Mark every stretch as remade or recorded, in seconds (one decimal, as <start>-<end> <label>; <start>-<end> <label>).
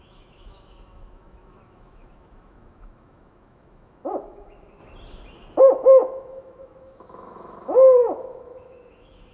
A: 0.0-4.8 remade; 4.8-5.6 recorded; 5.6-9.3 remade